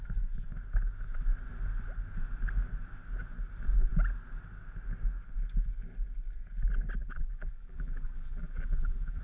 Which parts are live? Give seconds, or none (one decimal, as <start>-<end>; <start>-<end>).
0.0-7.0